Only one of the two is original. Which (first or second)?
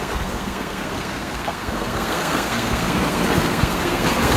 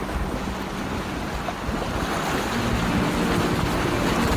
second